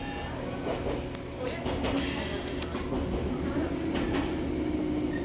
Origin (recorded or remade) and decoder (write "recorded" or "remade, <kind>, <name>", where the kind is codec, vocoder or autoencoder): recorded